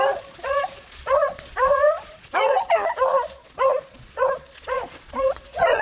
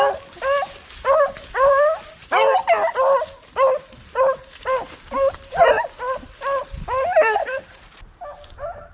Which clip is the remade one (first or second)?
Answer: first